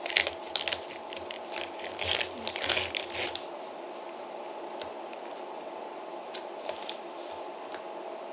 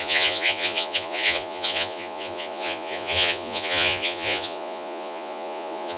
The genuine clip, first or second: first